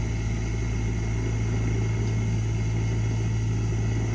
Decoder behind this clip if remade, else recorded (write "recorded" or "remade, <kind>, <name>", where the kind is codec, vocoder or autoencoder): recorded